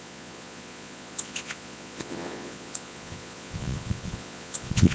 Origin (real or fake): fake